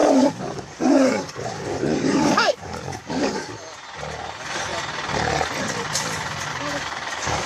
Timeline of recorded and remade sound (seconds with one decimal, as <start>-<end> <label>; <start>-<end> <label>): 0.0-3.5 remade; 3.5-6.5 recorded; 6.5-7.5 remade